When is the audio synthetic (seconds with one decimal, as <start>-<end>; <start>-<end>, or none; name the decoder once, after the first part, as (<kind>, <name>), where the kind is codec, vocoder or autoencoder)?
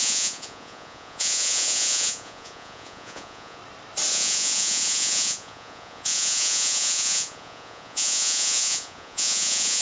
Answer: 0.0-3.6 (vocoder, Vocos); 4.1-9.8